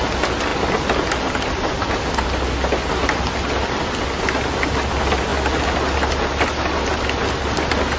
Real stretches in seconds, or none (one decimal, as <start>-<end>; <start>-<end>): 0.0-8.0